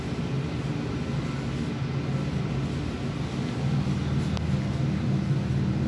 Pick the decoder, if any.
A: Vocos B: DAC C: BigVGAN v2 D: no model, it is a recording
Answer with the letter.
D